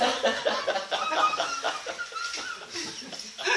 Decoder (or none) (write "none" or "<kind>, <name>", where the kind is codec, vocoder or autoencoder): none